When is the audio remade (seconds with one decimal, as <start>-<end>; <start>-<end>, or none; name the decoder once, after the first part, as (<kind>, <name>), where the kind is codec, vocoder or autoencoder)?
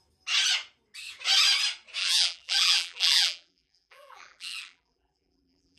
2.0-5.8 (vocoder, BigVGAN v2)